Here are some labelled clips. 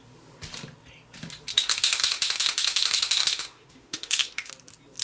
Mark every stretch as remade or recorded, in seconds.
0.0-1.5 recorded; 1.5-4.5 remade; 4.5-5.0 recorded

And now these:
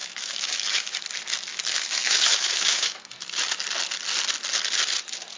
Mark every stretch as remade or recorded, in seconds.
0.0-1.0 remade; 1.0-1.5 recorded; 1.5-3.1 remade; 3.1-5.4 recorded

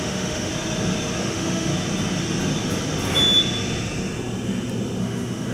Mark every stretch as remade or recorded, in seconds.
0.0-0.5 remade; 0.5-1.2 recorded; 1.2-1.7 remade; 1.7-5.0 recorded; 5.0-5.5 remade

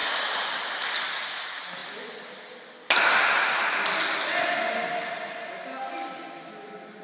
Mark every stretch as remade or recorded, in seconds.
0.0-7.0 recorded

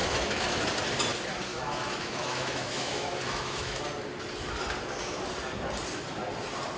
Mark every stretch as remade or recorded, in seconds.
0.0-0.7 remade; 0.7-1.5 recorded; 1.5-3.8 remade; 3.8-6.8 recorded

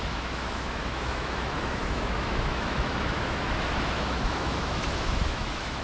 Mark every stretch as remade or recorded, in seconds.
0.0-5.8 remade

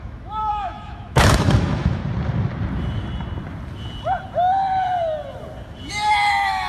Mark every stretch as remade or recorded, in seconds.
0.0-2.0 remade; 2.0-5.9 recorded; 5.9-6.7 remade